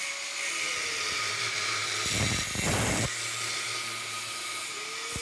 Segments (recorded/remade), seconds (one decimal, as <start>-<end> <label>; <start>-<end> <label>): 0.0-5.2 recorded